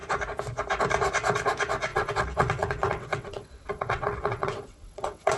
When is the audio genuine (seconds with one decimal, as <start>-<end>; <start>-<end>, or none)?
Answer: 0.0-1.9